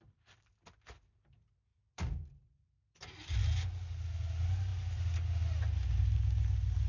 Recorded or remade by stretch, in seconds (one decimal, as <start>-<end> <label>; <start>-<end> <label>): 0.0-1.7 recorded; 1.7-2.6 remade; 2.6-4.7 recorded; 4.7-5.3 remade; 5.3-6.9 recorded